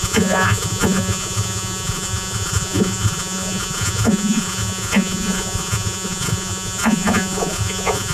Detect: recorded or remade remade